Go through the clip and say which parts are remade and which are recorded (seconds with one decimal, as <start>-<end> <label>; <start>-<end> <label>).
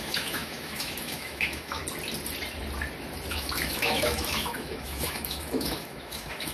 0.0-1.8 remade; 1.8-3.3 recorded; 3.3-6.5 remade